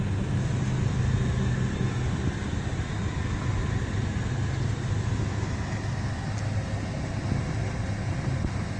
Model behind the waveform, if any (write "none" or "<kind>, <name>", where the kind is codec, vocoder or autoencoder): none